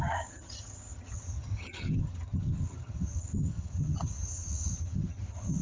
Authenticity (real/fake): fake